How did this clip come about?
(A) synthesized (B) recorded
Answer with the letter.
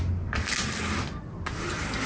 B